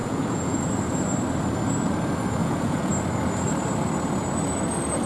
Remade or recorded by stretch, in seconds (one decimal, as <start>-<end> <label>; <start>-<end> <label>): 0.0-0.6 remade; 0.6-2.4 recorded; 2.4-2.9 remade; 2.9-5.1 recorded